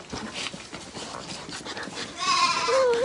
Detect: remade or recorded recorded